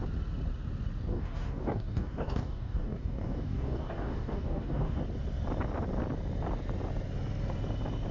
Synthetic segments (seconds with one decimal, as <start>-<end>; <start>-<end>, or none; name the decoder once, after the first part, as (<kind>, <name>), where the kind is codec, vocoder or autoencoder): 1.1-5.0 (codec, DAC)